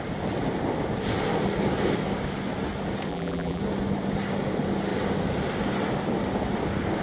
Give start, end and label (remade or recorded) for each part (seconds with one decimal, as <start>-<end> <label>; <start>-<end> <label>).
0.0-3.1 recorded; 3.1-3.6 remade; 3.6-7.0 recorded